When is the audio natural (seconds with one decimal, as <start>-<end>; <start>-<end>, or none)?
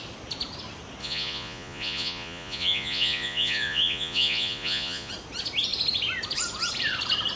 0.0-1.0; 5.1-7.4